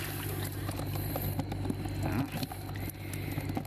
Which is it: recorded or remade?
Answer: recorded